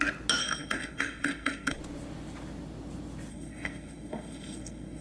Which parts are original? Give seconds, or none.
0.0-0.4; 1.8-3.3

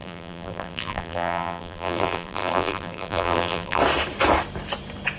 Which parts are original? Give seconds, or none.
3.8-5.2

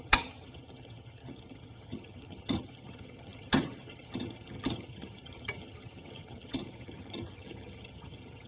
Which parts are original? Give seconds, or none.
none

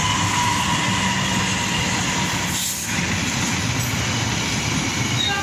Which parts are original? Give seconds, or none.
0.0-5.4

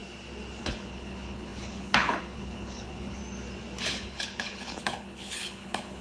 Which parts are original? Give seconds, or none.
0.0-0.6; 3.2-3.8

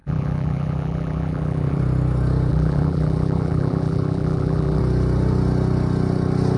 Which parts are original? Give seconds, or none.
1.8-2.5; 4.8-6.6